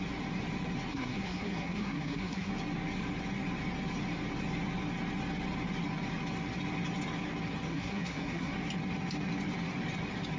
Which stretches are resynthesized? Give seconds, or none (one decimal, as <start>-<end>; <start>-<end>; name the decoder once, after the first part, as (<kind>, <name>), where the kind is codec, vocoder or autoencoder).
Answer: 0.9-2.5 (codec, SNAC); 7.7-8.5